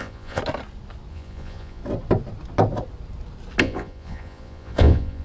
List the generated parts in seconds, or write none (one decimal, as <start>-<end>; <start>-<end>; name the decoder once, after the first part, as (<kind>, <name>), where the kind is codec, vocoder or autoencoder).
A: 0.0-0.4 (vocoder, Vocos); 1.1-1.8; 3.6-5.2